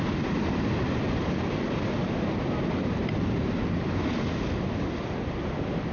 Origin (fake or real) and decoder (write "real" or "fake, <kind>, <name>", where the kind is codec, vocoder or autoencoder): real